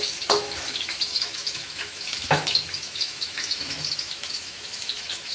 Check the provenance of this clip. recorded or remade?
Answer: remade